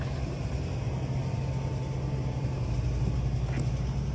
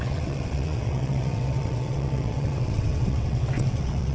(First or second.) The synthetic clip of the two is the second